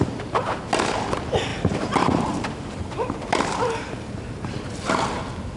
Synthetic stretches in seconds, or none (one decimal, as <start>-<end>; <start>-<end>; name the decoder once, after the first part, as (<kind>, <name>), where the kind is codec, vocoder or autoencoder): 1.5-4.9 (vocoder, BigVGAN v2)